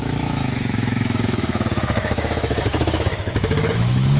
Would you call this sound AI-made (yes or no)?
yes